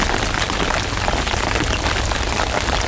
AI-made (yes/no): no